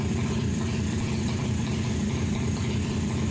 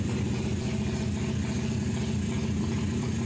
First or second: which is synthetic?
first